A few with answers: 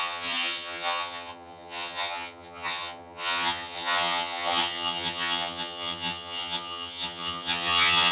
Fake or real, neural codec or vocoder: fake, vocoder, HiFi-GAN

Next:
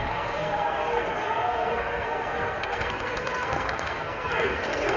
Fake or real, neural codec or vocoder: fake, codec, SNAC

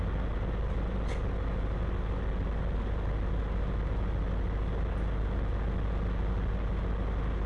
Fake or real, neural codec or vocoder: real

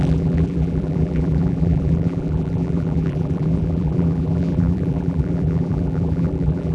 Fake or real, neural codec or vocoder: fake, vocoder, BigVGAN v2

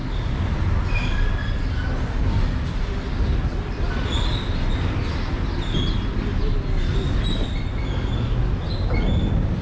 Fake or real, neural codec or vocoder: real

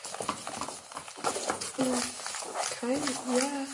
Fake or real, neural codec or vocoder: real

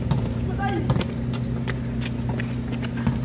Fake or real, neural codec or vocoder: real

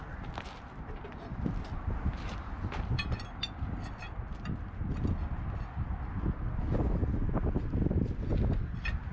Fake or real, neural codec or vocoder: real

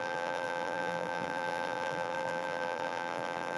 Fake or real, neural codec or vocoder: fake, vocoder, BigVGAN v2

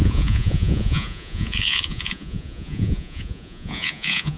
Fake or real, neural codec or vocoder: fake, vocoder, Vocos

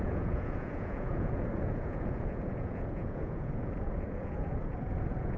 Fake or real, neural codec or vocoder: fake, vocoder, Vocos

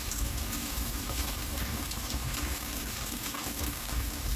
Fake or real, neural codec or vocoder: fake, codec, DAC